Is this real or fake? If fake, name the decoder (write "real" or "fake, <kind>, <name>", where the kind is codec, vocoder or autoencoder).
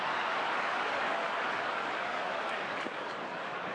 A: fake, codec, DAC